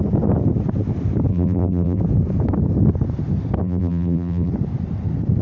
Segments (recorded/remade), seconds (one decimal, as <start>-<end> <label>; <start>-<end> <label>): 0.0-1.3 recorded; 1.3-2.0 remade; 2.0-3.6 recorded; 3.6-4.5 remade; 4.5-5.4 recorded